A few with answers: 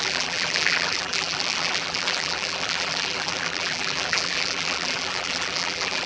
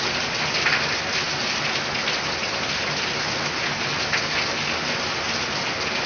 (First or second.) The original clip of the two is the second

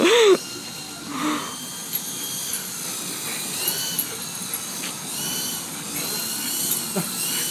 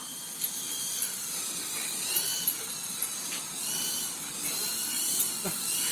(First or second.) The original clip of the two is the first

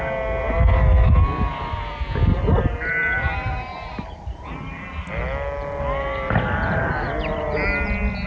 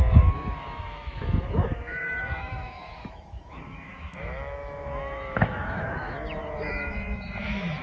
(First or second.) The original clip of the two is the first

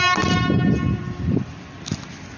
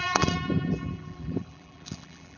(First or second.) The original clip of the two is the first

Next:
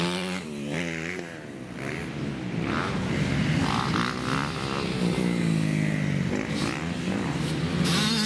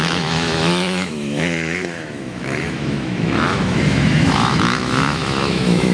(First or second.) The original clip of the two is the first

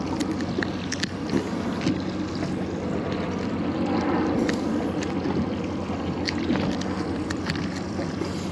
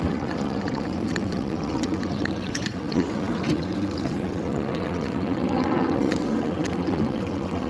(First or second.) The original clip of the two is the first